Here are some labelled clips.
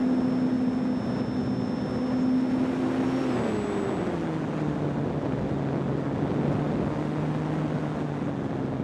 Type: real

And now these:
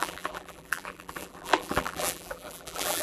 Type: fake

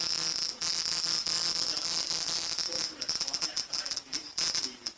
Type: fake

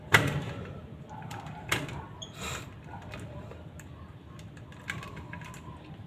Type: real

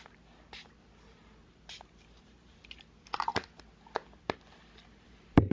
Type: real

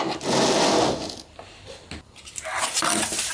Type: real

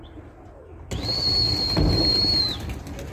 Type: real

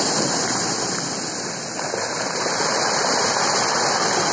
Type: real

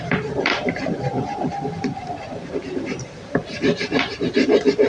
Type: fake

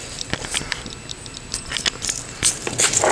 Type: real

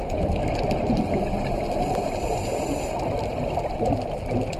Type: real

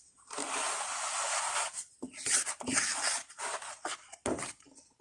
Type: real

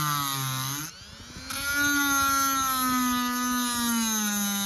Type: real